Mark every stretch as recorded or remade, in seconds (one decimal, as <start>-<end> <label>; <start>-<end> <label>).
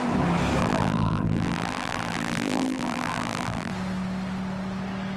0.0-0.6 recorded; 0.6-3.7 remade; 3.7-5.2 recorded